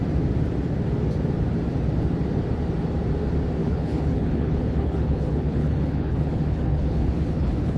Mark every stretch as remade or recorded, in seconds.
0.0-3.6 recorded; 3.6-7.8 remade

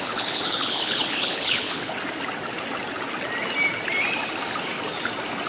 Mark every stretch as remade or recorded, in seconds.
0.0-1.9 remade; 1.9-5.5 recorded

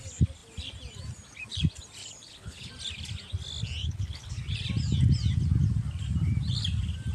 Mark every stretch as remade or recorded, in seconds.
0.0-2.0 recorded; 2.0-2.7 remade; 2.7-3.8 recorded; 3.8-4.3 remade; 4.3-7.1 recorded

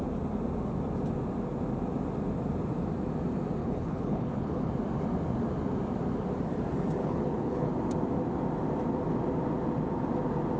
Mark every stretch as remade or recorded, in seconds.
0.0-3.6 recorded; 3.6-4.7 remade; 4.7-7.0 recorded; 7.0-7.7 remade; 7.7-10.6 recorded

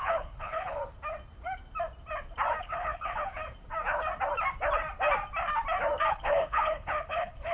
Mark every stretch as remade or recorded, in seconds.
0.0-0.8 remade; 0.8-2.6 recorded; 2.6-3.4 remade; 3.4-6.1 recorded; 6.1-7.5 remade

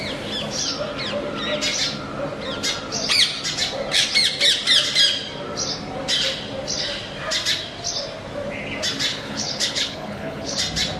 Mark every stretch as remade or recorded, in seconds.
0.0-9.1 recorded; 9.1-10.6 remade; 10.6-11.0 recorded